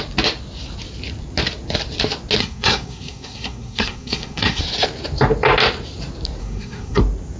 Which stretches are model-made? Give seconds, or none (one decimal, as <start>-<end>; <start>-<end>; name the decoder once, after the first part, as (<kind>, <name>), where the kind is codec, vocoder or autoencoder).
2.4-4.6 (codec, SNAC); 6.4-7.0